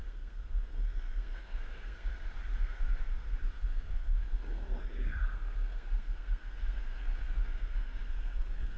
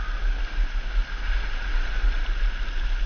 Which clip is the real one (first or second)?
second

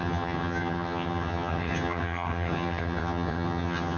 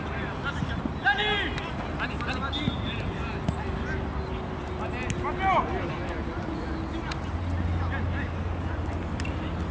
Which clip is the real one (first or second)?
second